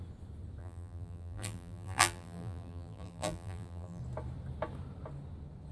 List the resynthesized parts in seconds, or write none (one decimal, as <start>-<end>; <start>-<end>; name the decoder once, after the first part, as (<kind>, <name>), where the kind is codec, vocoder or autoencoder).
0.6-4.0 (vocoder, BigVGAN v2)